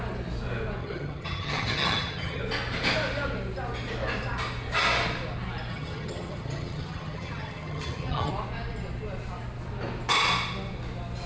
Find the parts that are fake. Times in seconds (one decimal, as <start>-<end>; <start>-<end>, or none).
0.8-2.4; 5.7-8.3